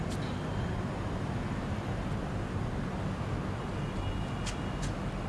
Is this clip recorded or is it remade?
recorded